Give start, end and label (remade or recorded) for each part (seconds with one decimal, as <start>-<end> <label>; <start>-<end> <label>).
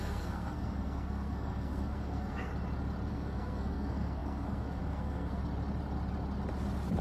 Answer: 0.0-2.5 remade; 2.5-3.1 recorded; 3.1-5.4 remade; 5.4-7.0 recorded